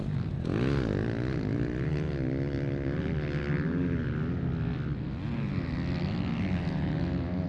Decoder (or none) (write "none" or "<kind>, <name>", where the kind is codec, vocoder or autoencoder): none